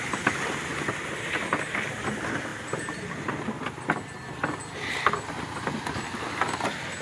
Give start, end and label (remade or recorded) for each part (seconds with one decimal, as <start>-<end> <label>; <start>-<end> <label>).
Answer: 0.0-7.0 recorded